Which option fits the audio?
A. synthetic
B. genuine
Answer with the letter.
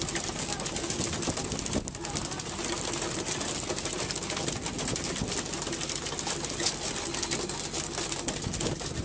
B